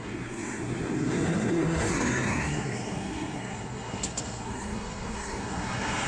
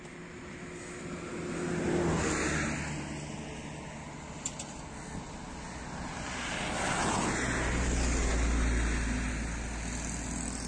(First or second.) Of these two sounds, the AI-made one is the first